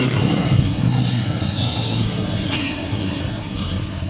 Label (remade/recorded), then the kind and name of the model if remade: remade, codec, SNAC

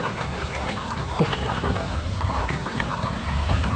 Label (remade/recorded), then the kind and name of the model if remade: remade, codec, SNAC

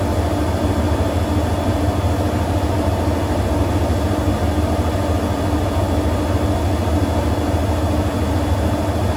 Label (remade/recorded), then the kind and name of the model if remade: recorded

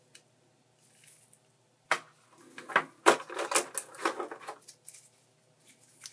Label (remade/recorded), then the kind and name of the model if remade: recorded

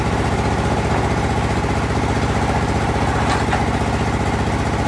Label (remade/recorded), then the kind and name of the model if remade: recorded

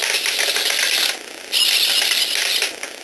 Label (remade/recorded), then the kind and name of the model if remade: recorded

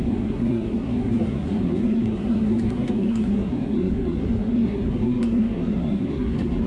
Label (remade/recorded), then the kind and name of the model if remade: remade, codec, SNAC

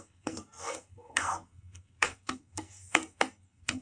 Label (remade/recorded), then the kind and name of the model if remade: remade, codec, SNAC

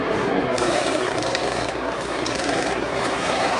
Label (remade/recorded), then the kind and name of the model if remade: remade, codec, SNAC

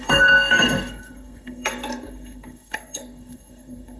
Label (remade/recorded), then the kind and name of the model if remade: remade, codec, SNAC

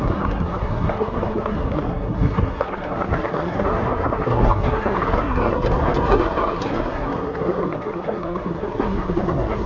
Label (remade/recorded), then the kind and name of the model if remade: remade, codec, SNAC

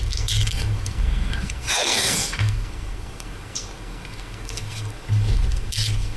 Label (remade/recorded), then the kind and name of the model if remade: remade, codec, SNAC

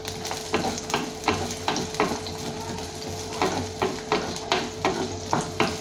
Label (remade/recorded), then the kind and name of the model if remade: recorded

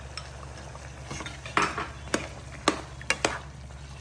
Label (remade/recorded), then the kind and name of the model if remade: recorded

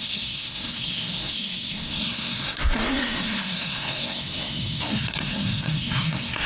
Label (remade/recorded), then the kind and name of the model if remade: remade, codec, SNAC